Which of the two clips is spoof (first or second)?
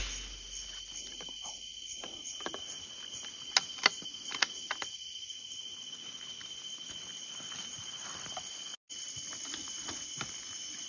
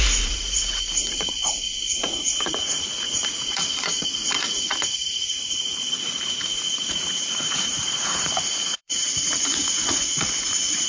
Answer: second